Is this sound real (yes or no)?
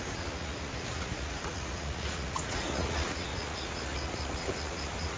no